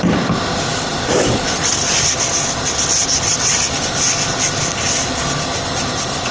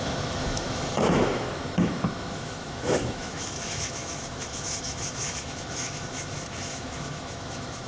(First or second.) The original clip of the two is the first